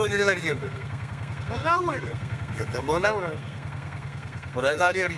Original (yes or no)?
no